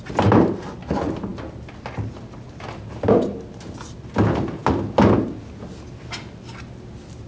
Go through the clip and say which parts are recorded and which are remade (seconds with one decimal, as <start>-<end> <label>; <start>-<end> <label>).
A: 0.0-7.3 recorded